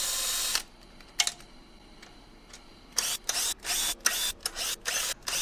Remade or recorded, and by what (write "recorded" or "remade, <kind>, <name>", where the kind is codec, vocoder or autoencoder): recorded